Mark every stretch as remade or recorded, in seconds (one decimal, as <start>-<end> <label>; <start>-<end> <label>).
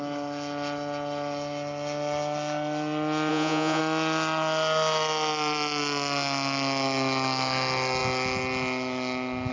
0.0-3.3 recorded; 3.3-3.8 remade; 3.8-9.5 recorded